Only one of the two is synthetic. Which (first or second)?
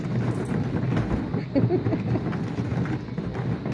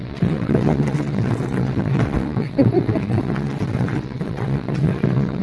second